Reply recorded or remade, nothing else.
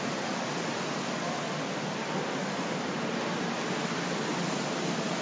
recorded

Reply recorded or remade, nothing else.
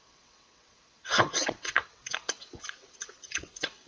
remade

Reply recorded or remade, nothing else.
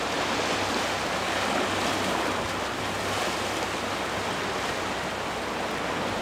recorded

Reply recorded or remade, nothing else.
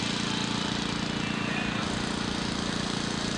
recorded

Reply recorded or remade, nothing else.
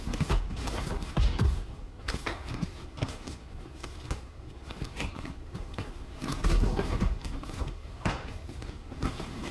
remade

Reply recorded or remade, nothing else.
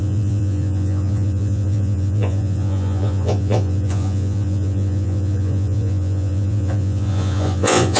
remade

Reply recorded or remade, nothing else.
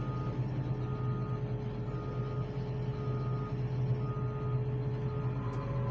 recorded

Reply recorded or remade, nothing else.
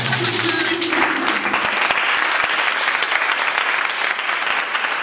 recorded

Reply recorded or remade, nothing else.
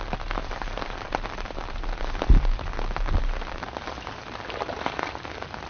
recorded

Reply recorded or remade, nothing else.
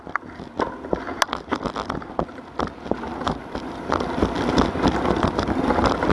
recorded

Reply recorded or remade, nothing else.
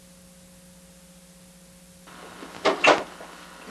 recorded